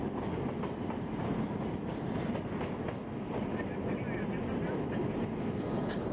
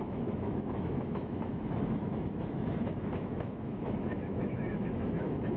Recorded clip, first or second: first